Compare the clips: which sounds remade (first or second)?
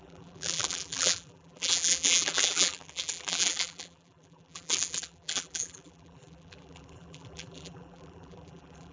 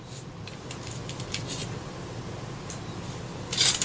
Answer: first